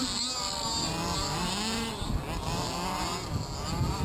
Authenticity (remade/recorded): recorded